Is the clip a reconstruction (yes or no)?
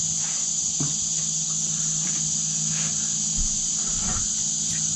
no